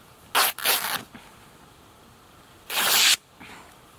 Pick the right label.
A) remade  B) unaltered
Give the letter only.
B